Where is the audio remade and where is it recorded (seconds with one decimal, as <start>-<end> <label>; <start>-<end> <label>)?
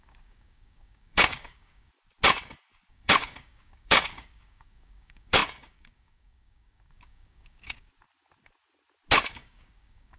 0.0-1.9 remade; 1.9-2.9 recorded; 2.9-7.9 remade; 7.9-9.3 recorded; 9.3-10.2 remade